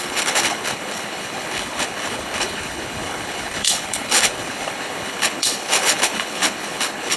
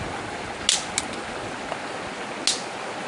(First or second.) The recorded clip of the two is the second